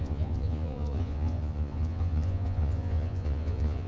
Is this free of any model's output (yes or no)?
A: no